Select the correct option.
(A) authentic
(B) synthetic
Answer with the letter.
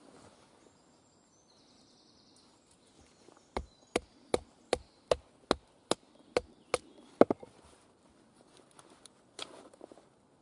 A